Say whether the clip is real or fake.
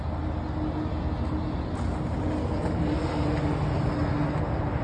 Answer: real